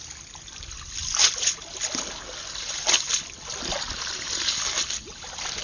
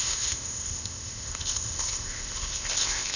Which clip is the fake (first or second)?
second